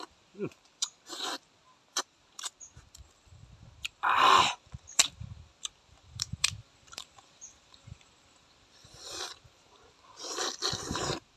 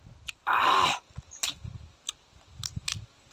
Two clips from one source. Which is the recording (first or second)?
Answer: second